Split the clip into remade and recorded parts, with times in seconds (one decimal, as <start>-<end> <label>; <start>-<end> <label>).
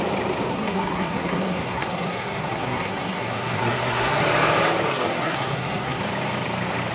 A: 0.0-0.5 recorded; 0.5-4.2 remade; 4.2-4.9 recorded; 4.9-6.0 remade; 6.0-6.9 recorded